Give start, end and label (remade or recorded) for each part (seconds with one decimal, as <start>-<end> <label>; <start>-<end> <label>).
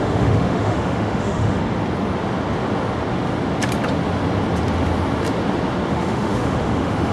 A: 0.0-1.6 remade; 1.6-5.9 recorded; 5.9-7.1 remade